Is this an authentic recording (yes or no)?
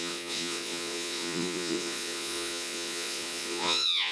no